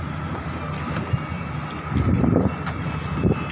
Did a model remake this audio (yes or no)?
no